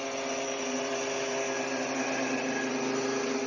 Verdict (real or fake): real